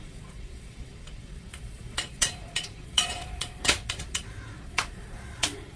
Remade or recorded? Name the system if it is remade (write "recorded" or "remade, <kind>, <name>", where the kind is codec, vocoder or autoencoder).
remade, vocoder, Vocos